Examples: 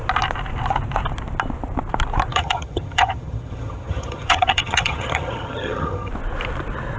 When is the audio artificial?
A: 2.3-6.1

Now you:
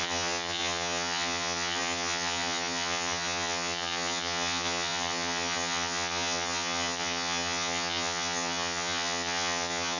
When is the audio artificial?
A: 0.0-10.0

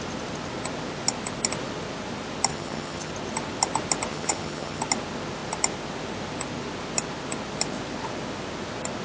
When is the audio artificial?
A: 2.5-3.1; 4.1-4.8